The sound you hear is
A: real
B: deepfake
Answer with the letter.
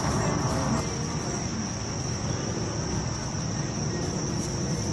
A